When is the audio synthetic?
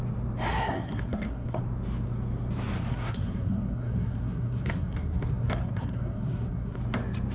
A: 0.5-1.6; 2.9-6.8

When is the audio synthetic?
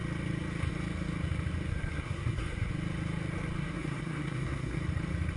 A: 1.7-2.7; 3.6-4.8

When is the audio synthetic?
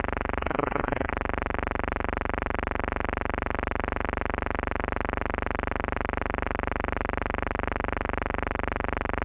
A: 0.4-1.1